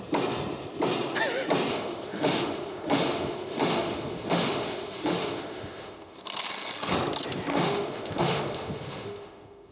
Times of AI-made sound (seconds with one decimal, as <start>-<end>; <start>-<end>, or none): 1.7-6.2; 7.5-9.7